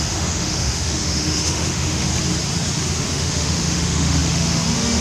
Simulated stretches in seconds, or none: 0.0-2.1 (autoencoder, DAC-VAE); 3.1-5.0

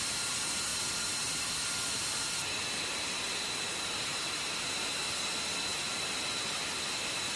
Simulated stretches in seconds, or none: none

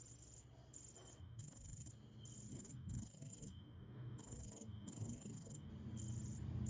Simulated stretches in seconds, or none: 1.2-1.9 (codec, DAC); 2.5-5.7